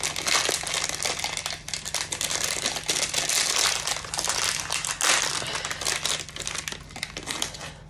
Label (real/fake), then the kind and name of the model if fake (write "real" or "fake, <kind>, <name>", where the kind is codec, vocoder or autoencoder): real